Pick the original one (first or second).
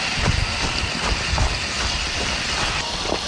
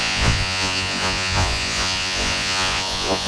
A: first